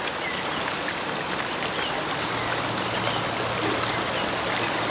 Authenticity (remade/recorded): recorded